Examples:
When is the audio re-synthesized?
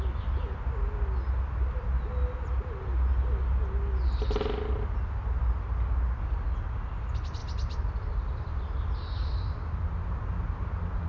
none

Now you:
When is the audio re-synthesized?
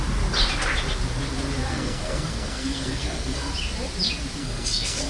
1.7-3.5 (codec, SNAC); 4.4-5.1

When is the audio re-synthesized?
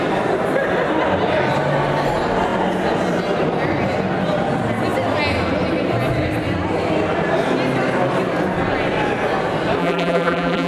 9.8-10.7 (vocoder, BigVGAN v2)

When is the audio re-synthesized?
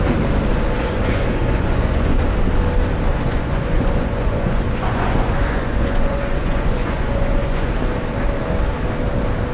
0.5-2.2 (vocoder, Vocos); 3.1-7.7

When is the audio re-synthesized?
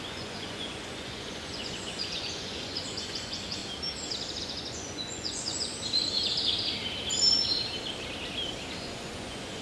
0.0-3.6 (vocoder, Vocos); 4.4-5.7; 8.8-9.6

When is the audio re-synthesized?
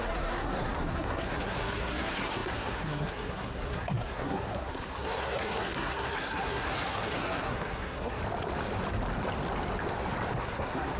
0.0-8.2 (codec, SNAC); 10.4-11.0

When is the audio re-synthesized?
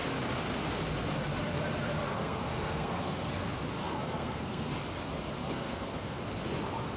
2.1-3.3 (codec, SNAC); 3.8-4.7; 5.4-6.2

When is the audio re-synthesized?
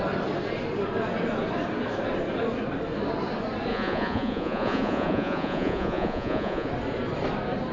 3.7-6.7 (vocoder, Vocos)